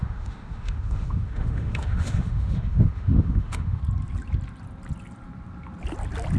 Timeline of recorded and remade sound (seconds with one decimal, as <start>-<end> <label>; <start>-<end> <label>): 0.0-3.8 remade; 3.8-6.4 recorded